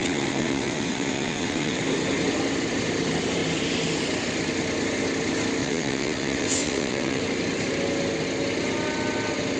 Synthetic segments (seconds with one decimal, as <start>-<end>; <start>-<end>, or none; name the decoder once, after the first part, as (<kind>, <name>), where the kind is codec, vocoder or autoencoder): 0.0-1.8 (vocoder, WaveNeXt); 5.6-7.2